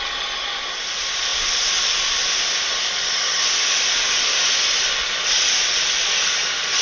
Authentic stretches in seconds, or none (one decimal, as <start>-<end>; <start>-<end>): 0.0-6.8

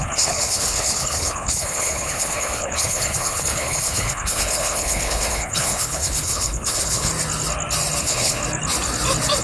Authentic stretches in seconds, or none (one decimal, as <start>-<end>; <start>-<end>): 7.1-8.0; 8.4-9.4

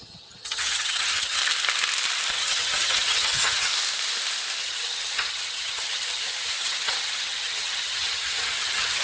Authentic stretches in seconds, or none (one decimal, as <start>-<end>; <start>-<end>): 1.4-2.3; 3.7-4.6